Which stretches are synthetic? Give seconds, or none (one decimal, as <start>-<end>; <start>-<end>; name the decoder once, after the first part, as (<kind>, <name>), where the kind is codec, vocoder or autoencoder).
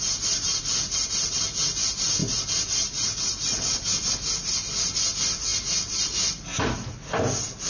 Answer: none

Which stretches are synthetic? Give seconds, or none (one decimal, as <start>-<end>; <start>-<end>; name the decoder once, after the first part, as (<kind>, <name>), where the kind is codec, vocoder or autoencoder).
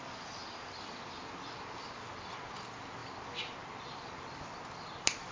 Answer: none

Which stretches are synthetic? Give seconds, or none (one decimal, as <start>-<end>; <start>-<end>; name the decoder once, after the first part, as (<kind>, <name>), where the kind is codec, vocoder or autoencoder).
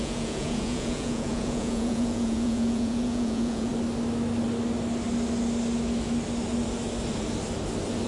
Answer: 0.0-3.7 (vocoder, Vocos)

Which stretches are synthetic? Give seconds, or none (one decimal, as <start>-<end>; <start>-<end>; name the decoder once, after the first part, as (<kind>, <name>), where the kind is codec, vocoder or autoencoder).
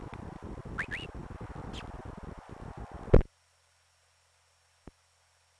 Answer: none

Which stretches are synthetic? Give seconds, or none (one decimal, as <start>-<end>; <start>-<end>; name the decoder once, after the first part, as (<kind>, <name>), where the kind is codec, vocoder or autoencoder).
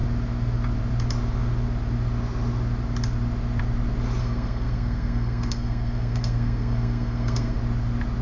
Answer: 4.2-7.6 (codec, SNAC)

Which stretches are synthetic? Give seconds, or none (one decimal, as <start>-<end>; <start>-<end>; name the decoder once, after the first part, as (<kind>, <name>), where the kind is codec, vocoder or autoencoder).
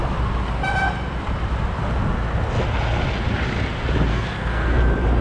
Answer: 4.1-4.8 (codec, SNAC)